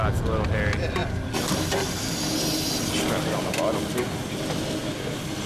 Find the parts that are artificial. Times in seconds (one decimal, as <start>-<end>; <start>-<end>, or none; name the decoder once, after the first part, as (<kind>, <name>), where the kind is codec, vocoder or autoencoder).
none